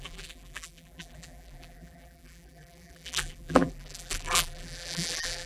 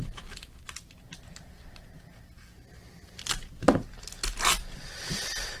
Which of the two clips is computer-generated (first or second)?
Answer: first